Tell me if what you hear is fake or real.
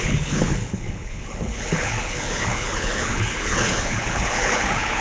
fake